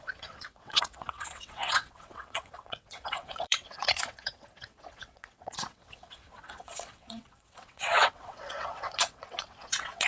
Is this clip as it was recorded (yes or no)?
no